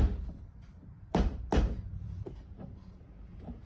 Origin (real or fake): fake